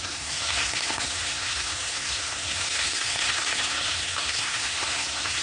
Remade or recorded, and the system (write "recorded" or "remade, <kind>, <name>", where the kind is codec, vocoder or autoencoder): remade, codec, SNAC